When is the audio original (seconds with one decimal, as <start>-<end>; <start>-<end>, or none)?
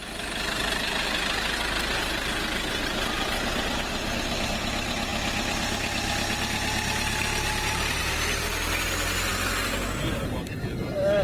0.0-11.2